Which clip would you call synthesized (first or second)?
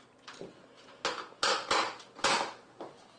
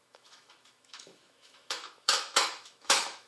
second